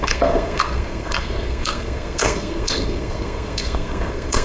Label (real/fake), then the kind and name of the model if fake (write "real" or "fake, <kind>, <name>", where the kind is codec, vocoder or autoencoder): fake, codec, SNAC